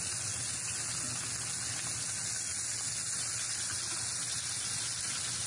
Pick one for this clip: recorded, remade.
recorded